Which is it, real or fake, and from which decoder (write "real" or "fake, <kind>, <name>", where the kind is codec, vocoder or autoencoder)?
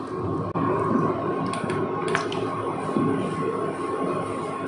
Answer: real